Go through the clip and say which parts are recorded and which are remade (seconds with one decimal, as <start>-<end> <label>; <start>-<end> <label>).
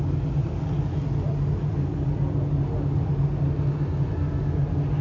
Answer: 0.0-5.0 recorded